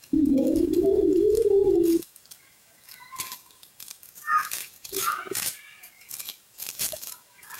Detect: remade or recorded remade